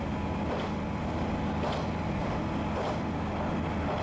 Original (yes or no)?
yes